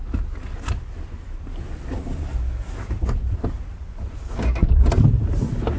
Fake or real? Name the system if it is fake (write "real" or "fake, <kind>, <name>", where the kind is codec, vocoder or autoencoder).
real